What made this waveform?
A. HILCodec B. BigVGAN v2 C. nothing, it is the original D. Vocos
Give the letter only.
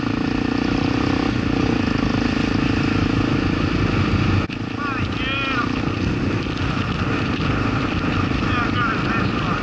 C